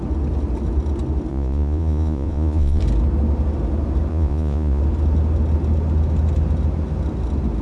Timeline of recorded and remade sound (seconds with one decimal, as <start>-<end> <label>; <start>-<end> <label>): 0.0-1.3 recorded; 1.3-2.8 remade; 2.8-4.1 recorded; 4.1-4.8 remade; 4.8-7.6 recorded